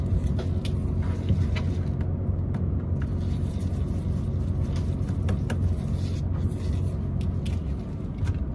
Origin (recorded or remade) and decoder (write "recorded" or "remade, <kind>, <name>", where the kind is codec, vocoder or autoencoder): recorded